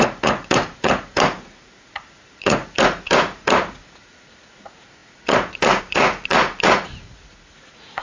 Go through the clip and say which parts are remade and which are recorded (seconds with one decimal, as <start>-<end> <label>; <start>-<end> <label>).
0.0-8.0 remade